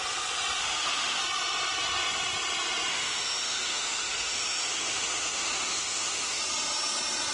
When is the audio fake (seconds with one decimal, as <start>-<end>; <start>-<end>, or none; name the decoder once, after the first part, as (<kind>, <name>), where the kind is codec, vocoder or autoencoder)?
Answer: 0.6-1.2 (autoencoder, DAC-VAE); 2.9-6.4